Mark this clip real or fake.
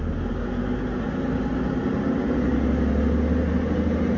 real